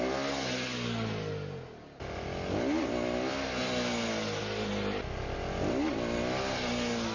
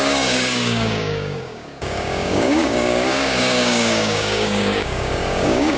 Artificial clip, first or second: second